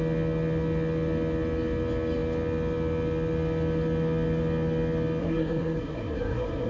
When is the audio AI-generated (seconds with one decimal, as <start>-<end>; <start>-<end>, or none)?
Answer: 5.2-6.7